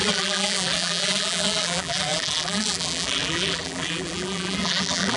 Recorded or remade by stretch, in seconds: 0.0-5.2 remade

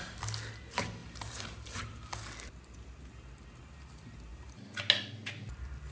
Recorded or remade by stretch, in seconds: 0.0-1.0 recorded; 1.0-2.1 remade; 2.1-4.3 recorded; 4.3-4.8 remade; 4.8-5.9 recorded

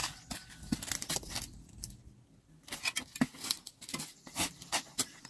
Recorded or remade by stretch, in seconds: 0.0-5.3 recorded

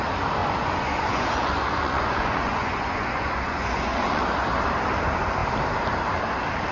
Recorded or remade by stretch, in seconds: 0.0-0.4 recorded; 0.4-4.2 remade; 4.2-6.7 recorded

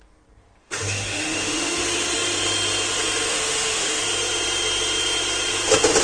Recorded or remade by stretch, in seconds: 0.0-0.6 recorded; 0.6-1.8 remade; 1.8-3.3 recorded; 3.3-4.0 remade; 4.0-6.0 recorded

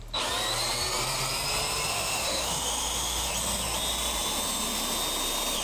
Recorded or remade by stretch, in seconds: 0.0-1.9 recorded; 1.9-3.3 remade; 3.3-5.6 recorded